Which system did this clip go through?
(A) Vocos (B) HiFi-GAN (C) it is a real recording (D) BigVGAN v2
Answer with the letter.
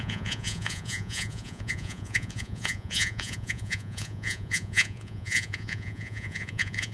A